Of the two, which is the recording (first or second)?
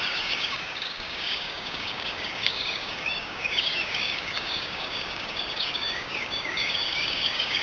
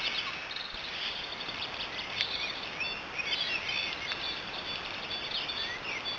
second